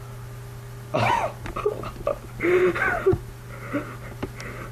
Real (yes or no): yes